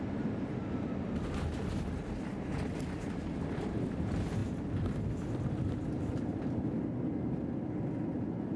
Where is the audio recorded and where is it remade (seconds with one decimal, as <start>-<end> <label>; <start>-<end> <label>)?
0.0-8.6 recorded